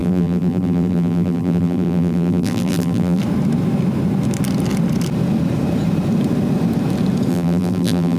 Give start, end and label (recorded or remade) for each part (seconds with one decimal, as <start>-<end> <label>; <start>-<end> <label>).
0.0-3.2 remade; 3.2-7.3 recorded; 7.3-8.2 remade